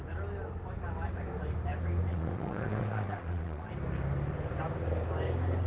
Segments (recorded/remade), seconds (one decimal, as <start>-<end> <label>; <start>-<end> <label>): 0.0-2.1 recorded; 2.1-3.7 remade; 3.7-5.7 recorded